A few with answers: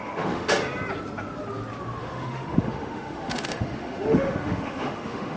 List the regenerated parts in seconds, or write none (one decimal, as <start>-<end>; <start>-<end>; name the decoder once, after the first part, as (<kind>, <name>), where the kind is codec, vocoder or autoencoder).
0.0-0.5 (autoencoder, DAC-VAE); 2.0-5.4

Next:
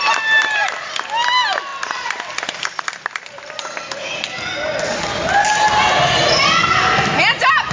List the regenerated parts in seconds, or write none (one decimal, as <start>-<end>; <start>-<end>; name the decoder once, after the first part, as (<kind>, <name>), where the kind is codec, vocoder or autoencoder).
none

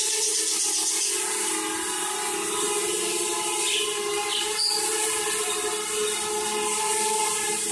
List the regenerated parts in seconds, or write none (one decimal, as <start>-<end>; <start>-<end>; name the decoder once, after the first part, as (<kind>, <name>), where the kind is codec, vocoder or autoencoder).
none

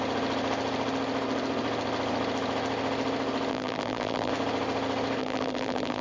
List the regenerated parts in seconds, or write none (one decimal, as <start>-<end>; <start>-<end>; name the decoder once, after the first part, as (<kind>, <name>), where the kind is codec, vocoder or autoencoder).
3.5-4.3 (vocoder, BigVGAN v2); 5.2-6.0